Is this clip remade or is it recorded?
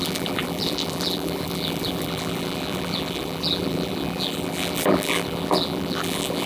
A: remade